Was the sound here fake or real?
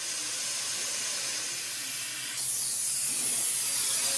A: real